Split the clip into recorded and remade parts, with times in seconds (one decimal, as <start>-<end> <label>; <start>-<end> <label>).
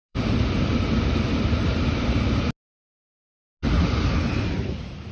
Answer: 0.0-2.4 remade; 2.4-5.1 recorded